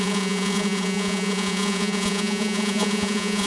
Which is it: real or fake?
fake